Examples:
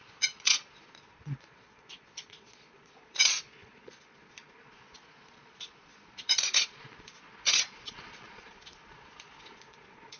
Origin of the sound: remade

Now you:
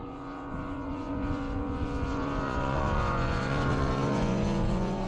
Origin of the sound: remade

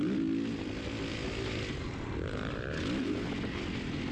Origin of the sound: recorded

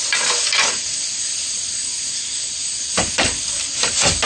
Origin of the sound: recorded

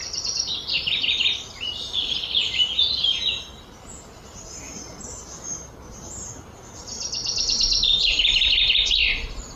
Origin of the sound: recorded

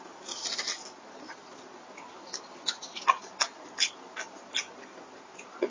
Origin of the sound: recorded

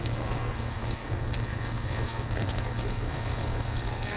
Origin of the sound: remade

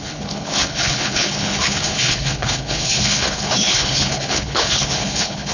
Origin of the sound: remade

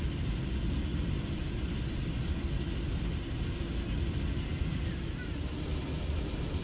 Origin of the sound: recorded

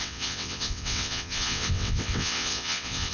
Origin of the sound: remade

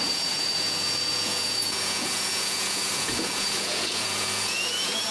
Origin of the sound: remade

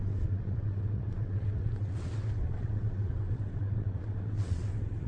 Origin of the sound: remade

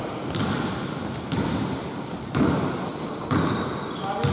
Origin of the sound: recorded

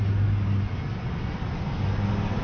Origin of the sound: recorded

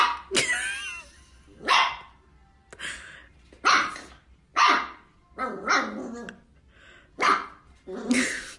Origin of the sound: recorded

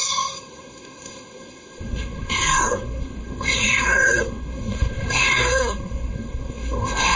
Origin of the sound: remade